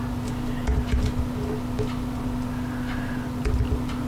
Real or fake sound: real